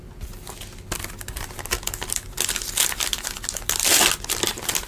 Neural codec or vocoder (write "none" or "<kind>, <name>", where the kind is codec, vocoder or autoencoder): none